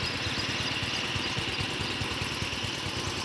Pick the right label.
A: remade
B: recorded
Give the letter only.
B